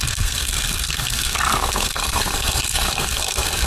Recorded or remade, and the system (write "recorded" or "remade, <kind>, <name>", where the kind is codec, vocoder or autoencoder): remade, codec, SNAC